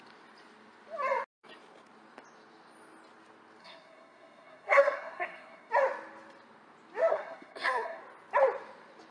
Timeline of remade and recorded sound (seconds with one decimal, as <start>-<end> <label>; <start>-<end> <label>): 0.0-3.6 recorded; 3.6-5.7 remade; 5.7-7.1 recorded; 7.1-8.0 remade; 8.0-9.1 recorded